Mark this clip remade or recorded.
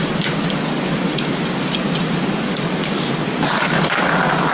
remade